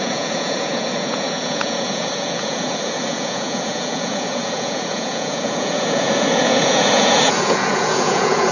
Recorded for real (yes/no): no